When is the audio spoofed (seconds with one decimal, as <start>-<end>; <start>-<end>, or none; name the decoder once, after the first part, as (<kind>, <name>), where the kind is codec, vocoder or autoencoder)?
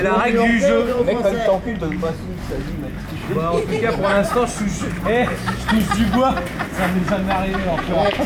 0.5-1.8 (vocoder, Vocos); 7.6-8.3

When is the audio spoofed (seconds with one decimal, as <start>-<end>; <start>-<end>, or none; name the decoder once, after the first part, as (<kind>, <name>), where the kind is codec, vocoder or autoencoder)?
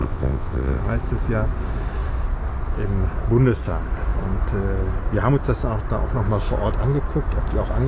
0.0-0.8 (vocoder, WaveNeXt)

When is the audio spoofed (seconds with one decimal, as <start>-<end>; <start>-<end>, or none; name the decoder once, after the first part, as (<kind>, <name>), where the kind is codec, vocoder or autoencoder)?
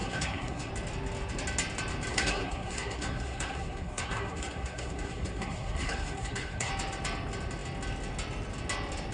0.0-0.7 (codec, SNAC); 2.1-6.7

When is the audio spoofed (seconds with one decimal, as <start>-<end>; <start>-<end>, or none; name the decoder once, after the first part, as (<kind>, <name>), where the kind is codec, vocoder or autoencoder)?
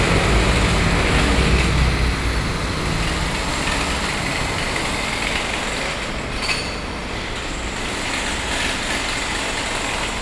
none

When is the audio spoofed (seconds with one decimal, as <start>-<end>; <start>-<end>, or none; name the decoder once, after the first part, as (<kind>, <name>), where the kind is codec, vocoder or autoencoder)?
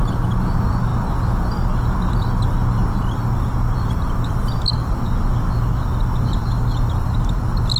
none